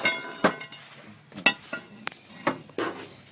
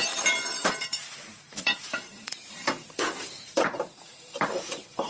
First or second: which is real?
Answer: first